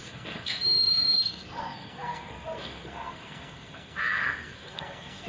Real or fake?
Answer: fake